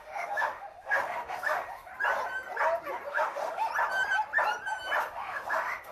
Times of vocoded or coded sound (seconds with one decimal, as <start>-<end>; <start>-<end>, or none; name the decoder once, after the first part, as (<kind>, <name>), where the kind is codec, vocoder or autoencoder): 0.0-1.9 (autoencoder, DAC-VAE); 3.1-3.7; 5.0-5.9